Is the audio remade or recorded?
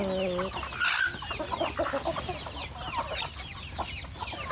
recorded